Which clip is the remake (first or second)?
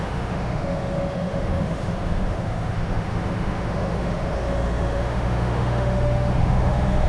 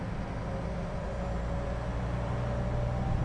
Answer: first